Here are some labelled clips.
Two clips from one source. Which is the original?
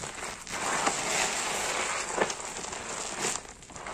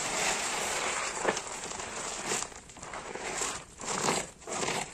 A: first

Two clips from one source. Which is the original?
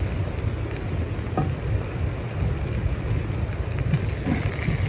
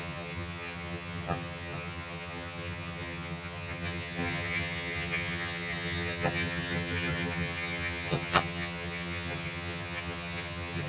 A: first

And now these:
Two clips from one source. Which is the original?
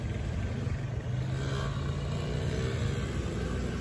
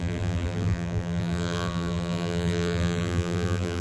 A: first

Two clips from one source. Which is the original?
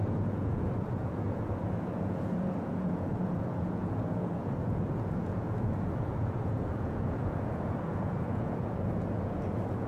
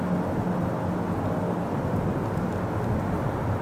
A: second